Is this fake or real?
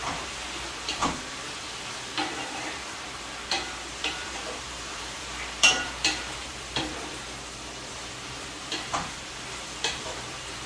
fake